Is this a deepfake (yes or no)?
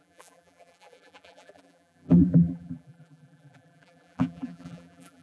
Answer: yes